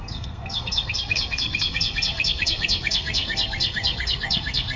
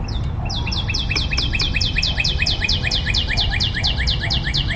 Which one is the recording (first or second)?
second